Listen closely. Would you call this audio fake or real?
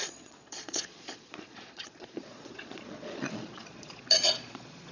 fake